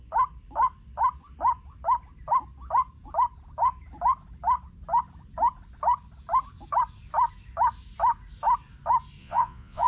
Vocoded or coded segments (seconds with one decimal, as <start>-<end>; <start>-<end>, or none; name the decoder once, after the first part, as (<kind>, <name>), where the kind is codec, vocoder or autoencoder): 9.2-9.9 (vocoder, Vocos)